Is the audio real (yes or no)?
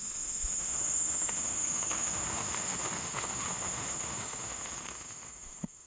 no